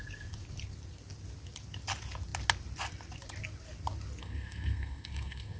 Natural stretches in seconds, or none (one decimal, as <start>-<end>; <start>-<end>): 0.0-4.2